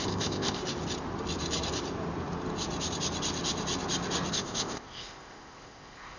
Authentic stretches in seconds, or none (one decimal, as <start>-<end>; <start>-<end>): 0.6-4.3